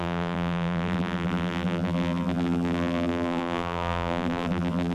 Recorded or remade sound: remade